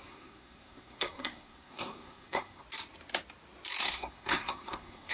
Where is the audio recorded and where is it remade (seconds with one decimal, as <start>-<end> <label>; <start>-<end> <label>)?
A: 0.0-2.6 remade; 2.6-3.8 recorded; 3.8-5.1 remade